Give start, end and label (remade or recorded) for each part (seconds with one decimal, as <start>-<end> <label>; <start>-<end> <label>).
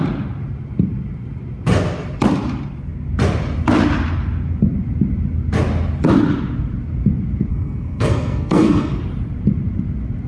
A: 0.0-7.5 recorded; 7.5-9.0 remade; 9.0-10.3 recorded